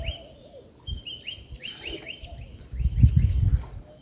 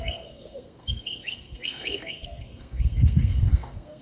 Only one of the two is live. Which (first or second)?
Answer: first